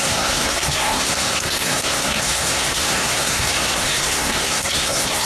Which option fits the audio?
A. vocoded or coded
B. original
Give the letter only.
A